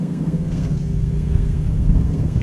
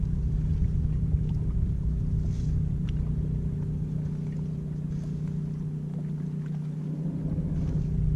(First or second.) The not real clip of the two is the first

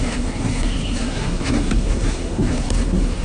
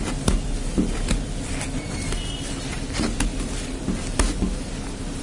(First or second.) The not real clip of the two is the first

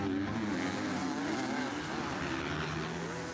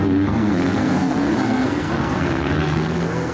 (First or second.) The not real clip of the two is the second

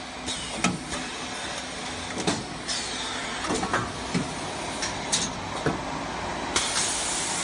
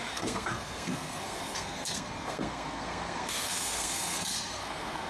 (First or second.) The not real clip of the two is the second